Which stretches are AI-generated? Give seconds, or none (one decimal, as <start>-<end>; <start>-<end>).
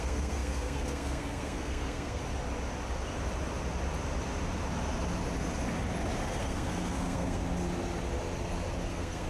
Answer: 0.0-2.2; 6.4-7.4; 8.9-9.3